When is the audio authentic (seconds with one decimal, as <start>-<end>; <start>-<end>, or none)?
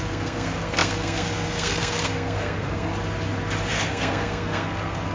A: 2.9-3.7